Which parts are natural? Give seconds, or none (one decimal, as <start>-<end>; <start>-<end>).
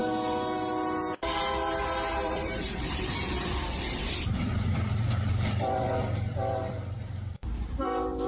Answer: 0.0-2.1